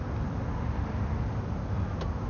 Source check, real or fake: real